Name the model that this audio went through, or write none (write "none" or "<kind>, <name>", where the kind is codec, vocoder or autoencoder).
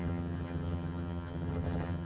vocoder, HiFi-GAN